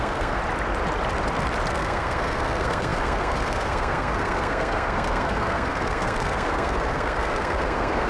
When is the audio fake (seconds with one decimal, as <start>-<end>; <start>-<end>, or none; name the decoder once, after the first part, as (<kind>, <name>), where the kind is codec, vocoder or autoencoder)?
0.0-0.4 (codec, SNAC); 1.7-8.1